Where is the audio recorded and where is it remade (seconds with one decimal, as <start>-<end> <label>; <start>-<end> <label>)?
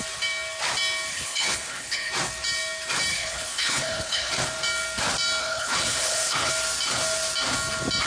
0.0-1.1 recorded; 1.1-2.1 remade; 2.1-3.1 recorded; 3.1-4.3 remade; 4.3-5.4 recorded; 5.4-6.5 remade; 6.5-8.1 recorded